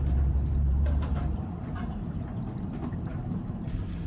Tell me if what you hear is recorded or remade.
remade